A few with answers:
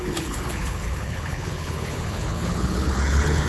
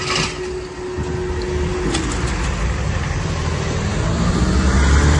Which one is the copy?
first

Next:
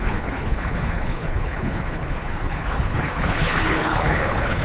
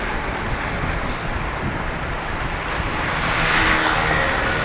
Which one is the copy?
first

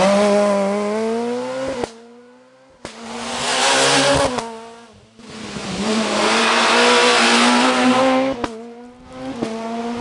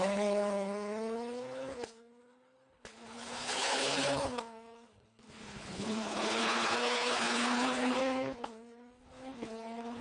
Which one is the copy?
second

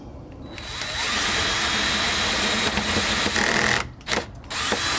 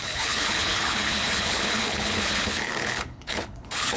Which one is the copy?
second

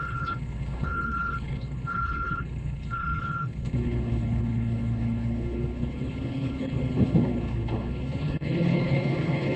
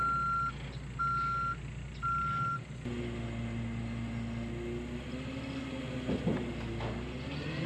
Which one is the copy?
first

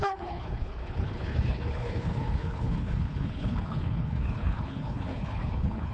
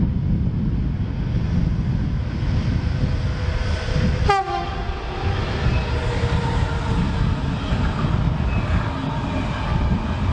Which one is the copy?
first